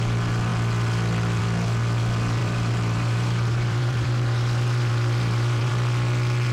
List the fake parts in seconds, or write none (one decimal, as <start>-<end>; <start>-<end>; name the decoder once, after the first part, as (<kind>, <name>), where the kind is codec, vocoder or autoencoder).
2.4-5.7 (vocoder, BigVGAN v2)